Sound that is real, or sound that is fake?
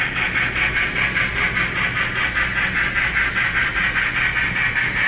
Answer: real